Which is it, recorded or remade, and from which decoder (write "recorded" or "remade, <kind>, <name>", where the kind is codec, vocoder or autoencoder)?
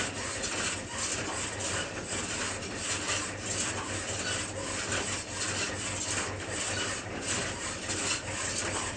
recorded